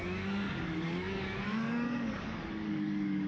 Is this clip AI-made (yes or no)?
yes